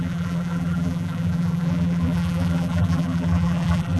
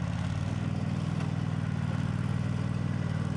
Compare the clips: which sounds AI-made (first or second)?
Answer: first